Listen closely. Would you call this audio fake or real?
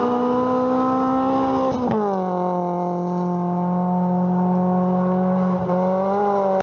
real